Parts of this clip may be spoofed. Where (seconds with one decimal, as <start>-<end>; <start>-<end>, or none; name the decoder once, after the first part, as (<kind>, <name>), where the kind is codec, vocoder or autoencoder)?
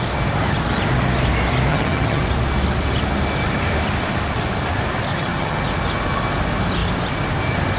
1.7-2.2 (vocoder, HiFi-GAN); 5.1-5.6